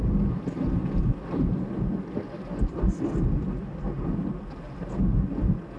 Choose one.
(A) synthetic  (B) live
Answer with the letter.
B